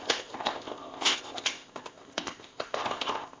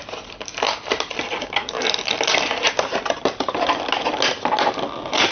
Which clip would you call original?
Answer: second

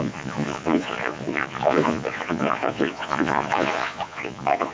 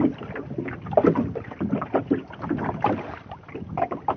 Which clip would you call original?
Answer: second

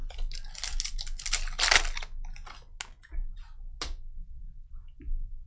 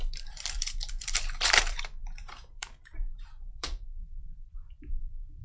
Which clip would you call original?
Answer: first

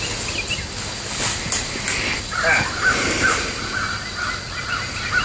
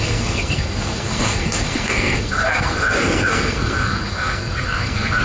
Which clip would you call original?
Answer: first